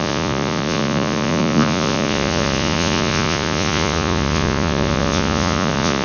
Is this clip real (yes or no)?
no